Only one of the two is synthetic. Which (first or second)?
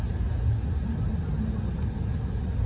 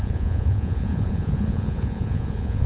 second